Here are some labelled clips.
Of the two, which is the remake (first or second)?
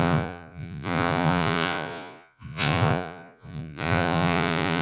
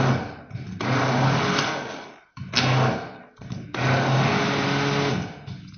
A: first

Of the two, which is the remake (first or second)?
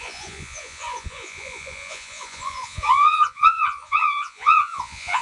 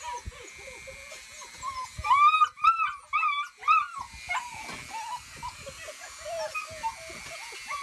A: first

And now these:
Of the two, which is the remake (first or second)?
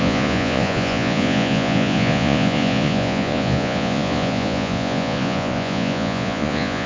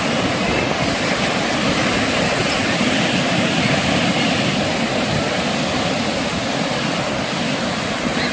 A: first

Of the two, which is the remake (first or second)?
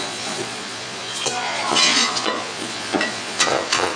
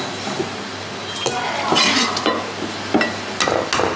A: first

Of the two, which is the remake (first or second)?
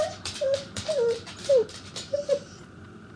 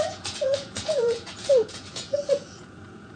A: second